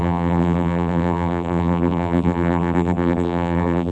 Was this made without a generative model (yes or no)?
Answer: no